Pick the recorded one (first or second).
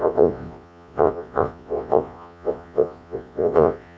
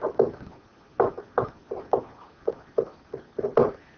second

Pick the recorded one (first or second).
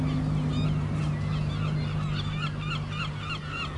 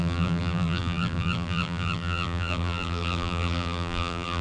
first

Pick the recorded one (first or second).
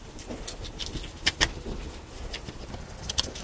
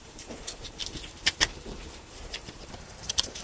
first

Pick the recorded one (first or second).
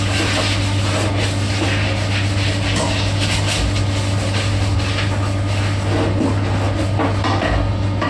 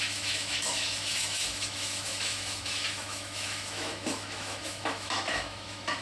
first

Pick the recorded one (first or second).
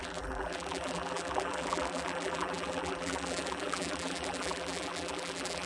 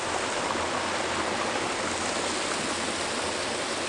second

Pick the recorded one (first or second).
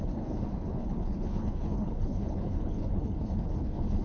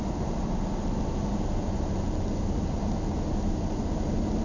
second